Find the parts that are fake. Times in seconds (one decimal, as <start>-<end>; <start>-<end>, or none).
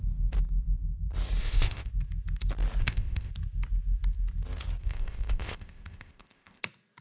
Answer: 1.4-1.9; 2.8-3.3; 4.8-6.6